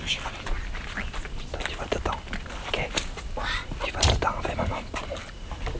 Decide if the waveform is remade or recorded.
recorded